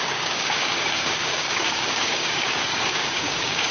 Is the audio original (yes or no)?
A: no